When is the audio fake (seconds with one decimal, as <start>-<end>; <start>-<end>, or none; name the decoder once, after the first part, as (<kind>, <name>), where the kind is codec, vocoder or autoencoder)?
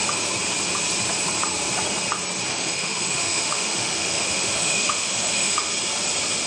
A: 2.5-5.7 (autoencoder, DAC-VAE)